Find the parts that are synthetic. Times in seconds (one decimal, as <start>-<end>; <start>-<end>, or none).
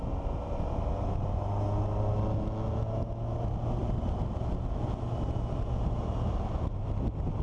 none